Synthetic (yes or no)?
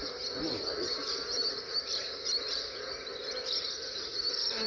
yes